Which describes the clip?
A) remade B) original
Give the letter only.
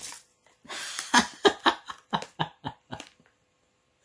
B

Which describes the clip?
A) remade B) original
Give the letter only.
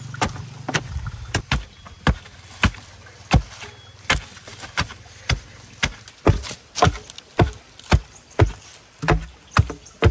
B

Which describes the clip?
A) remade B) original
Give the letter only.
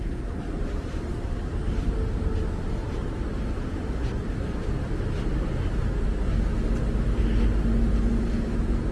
B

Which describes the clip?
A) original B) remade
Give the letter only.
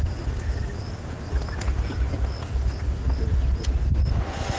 A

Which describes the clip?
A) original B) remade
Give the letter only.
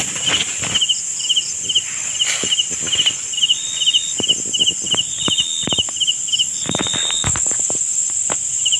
A